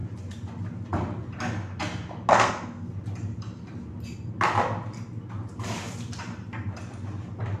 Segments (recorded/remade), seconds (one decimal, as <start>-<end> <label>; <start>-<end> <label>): 0.0-2.3 recorded; 2.3-2.9 remade; 2.9-7.6 recorded